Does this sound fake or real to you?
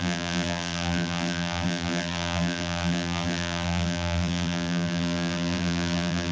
fake